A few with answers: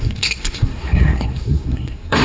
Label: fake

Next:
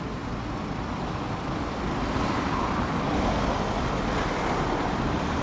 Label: fake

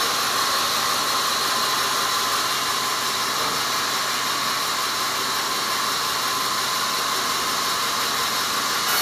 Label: real